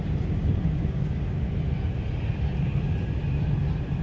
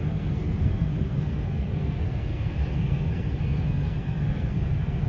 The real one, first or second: first